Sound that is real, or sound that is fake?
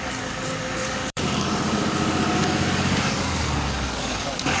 fake